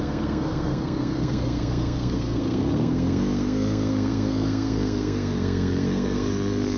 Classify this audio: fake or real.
fake